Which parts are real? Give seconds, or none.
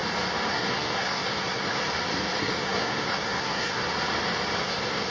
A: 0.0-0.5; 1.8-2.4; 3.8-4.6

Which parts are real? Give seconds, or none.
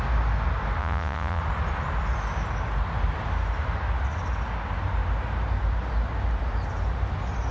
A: 0.0-0.8; 1.4-7.5